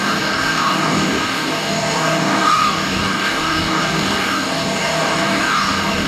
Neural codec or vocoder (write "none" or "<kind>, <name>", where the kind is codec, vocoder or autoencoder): codec, DAC